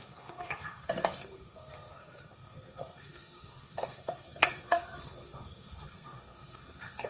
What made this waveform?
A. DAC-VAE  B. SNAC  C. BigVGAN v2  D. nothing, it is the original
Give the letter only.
B